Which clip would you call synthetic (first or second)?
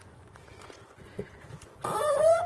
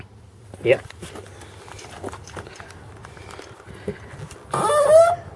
first